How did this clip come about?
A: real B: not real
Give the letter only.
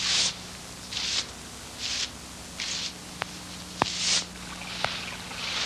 A